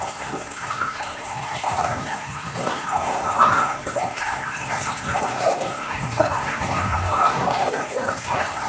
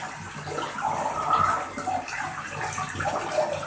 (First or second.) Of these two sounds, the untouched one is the second